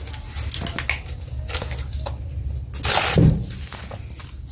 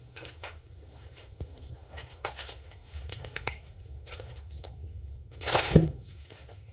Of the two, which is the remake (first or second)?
second